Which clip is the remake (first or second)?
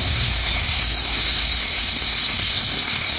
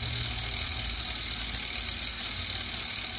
first